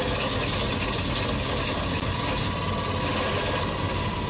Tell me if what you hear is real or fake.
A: real